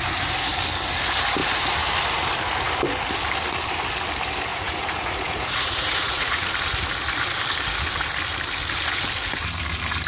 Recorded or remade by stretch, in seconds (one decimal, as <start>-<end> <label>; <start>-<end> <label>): 0.0-4.5 recorded; 4.5-6.5 remade; 6.5-10.1 recorded

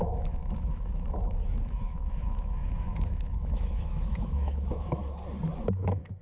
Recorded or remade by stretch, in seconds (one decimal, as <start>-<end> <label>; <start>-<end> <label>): 0.0-5.0 remade; 5.0-5.6 recorded; 5.6-6.2 remade

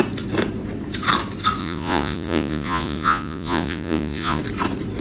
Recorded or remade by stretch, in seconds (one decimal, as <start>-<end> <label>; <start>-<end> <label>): 0.0-1.6 recorded; 1.6-4.4 remade; 4.4-5.0 recorded

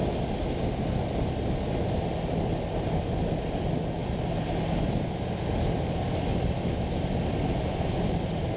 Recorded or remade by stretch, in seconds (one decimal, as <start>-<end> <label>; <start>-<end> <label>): 0.0-8.6 recorded